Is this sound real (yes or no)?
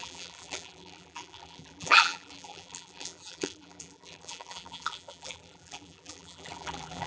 no